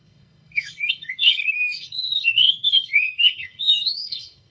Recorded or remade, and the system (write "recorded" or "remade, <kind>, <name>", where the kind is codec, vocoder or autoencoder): remade, codec, SNAC